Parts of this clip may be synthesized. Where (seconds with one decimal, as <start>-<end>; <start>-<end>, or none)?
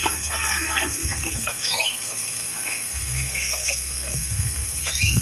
0.0-5.2